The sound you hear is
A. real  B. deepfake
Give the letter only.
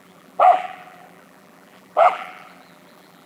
B